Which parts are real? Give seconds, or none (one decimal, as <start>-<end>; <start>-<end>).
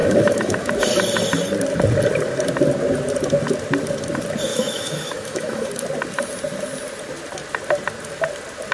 0.7-4.5; 5.7-8.7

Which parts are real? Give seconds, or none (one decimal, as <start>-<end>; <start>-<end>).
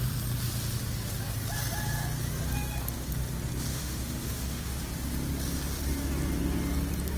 0.0-3.7; 4.8-7.2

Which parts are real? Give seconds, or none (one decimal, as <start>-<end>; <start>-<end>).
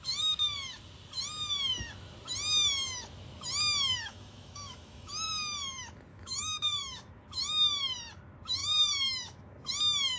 0.0-4.1; 5.1-6.1; 7.2-8.6; 9.7-10.2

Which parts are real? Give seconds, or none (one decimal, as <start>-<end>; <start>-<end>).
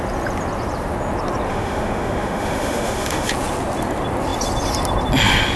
0.0-1.5; 3.3-5.6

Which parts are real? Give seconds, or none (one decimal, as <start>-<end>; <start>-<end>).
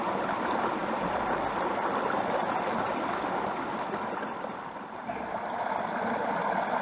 0.0-6.8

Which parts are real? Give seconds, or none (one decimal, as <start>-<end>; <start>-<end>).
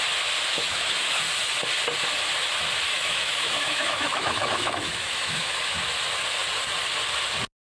0.0-0.5; 1.2-2.9; 5.8-7.8